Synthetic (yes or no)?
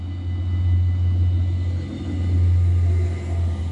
no